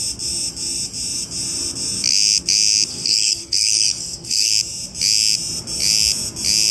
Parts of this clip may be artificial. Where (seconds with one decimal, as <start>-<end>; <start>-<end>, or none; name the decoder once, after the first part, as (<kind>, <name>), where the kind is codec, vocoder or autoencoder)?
2.9-4.5 (codec, SNAC)